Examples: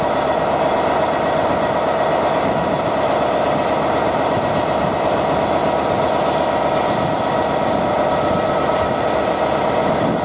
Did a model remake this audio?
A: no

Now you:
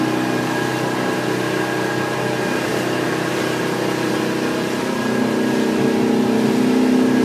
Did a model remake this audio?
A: no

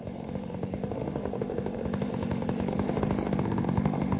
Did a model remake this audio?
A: yes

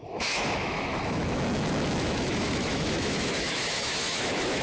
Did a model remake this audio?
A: yes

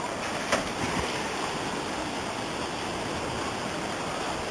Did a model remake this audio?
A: no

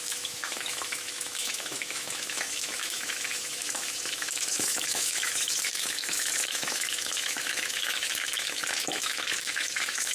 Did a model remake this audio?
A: yes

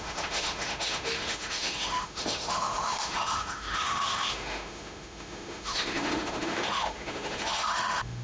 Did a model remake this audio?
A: yes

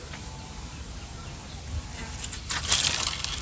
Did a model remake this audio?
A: no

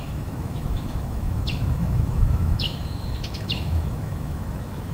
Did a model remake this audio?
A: yes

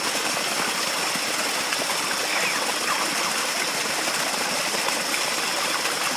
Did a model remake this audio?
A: no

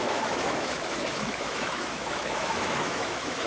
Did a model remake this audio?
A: yes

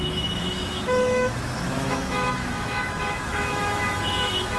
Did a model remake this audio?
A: yes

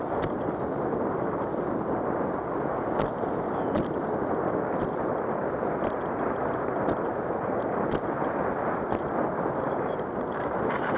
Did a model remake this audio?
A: no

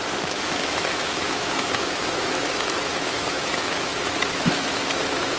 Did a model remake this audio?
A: yes